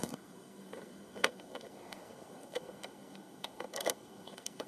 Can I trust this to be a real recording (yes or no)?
no